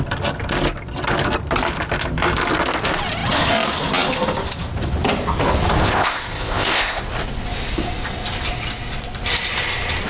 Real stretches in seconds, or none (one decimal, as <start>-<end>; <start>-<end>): 0.0-5.8; 7.0-10.1